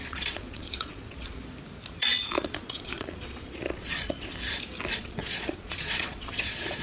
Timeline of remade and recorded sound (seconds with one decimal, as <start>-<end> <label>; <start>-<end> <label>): 0.0-1.4 remade; 1.4-2.0 recorded; 2.0-4.3 remade; 4.3-5.0 recorded; 5.0-6.8 remade